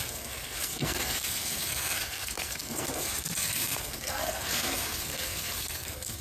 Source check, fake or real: fake